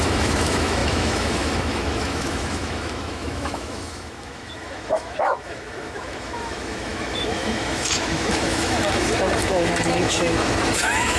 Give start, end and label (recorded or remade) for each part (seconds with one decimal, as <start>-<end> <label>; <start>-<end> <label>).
0.0-11.2 remade